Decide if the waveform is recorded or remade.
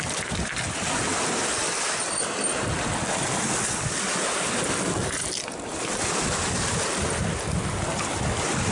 recorded